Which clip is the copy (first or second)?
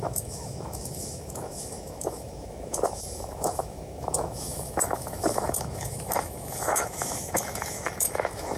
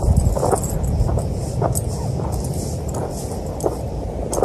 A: first